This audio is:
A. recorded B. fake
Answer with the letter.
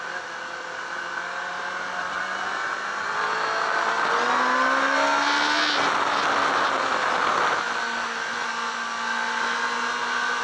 A